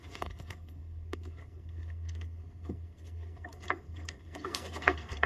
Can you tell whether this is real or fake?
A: fake